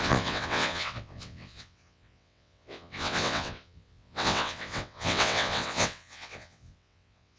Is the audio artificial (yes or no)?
yes